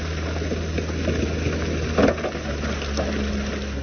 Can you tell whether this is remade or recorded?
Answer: recorded